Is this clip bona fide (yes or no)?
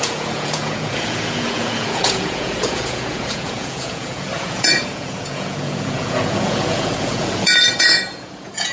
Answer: no